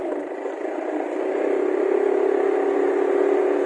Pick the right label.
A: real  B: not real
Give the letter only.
A